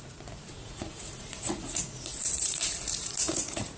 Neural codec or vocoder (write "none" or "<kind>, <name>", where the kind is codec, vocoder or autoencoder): vocoder, Vocos